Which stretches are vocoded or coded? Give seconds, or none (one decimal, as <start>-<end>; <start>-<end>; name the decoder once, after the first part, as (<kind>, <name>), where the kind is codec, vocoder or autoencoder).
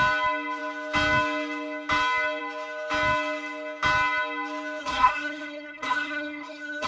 4.8-6.9 (codec, SNAC)